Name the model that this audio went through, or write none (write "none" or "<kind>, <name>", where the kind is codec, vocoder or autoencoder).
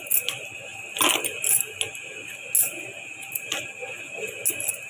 none